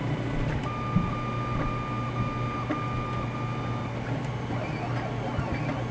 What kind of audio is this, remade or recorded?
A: recorded